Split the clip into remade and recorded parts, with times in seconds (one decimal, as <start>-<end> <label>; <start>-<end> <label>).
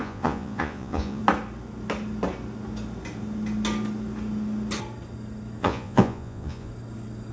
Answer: 0.0-1.2 remade; 1.2-5.6 recorded; 5.6-6.7 remade; 6.7-7.3 recorded